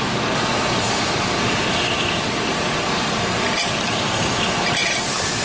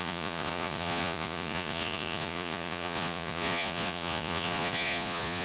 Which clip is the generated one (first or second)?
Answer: second